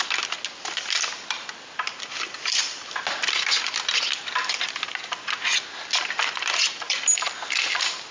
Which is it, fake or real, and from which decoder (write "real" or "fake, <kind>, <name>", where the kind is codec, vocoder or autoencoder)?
real